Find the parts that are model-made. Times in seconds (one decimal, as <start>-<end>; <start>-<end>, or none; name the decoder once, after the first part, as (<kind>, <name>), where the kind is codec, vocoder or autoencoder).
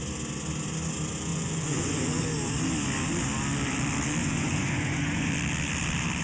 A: 1.3-2.2 (vocoder, Vocos); 4.2-5.3